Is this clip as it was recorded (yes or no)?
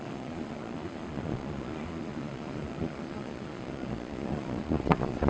no